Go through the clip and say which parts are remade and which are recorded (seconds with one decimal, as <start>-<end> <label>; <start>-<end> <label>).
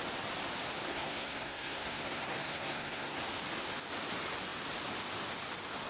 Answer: 0.0-0.9 recorded; 0.9-3.2 remade; 3.2-5.9 recorded